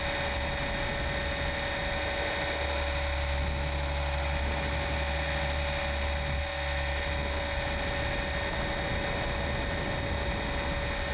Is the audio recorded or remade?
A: recorded